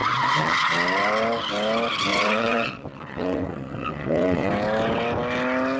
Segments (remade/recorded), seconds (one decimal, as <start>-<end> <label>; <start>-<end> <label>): 0.0-0.7 remade; 0.7-2.1 recorded; 2.1-4.5 remade; 4.5-5.8 recorded